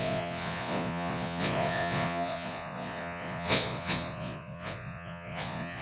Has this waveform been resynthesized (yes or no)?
yes